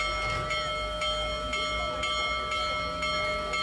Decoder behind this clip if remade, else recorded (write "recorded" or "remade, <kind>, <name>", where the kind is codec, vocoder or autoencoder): recorded